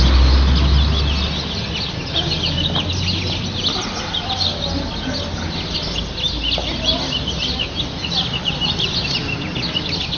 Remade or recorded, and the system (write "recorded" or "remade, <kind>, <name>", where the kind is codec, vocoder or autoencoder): recorded